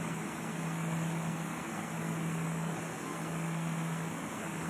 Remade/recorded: remade